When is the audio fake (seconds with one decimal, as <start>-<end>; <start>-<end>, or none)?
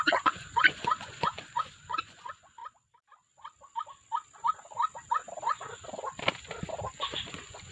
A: 0.0-2.6; 6.9-7.7